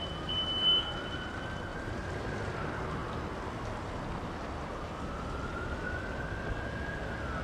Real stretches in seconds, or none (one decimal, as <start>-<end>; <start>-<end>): 0.0-1.7; 2.5-7.4